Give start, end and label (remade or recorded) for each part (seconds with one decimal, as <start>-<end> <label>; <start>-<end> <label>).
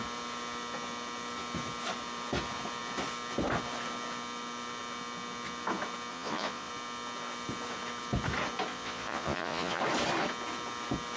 0.0-6.1 recorded; 6.1-6.7 remade; 6.7-8.7 recorded; 8.7-9.8 remade; 9.8-11.2 recorded